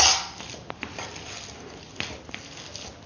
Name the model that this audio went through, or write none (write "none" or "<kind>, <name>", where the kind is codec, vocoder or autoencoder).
none